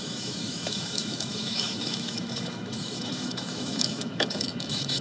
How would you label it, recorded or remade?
remade